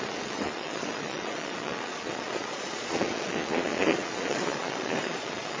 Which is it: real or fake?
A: fake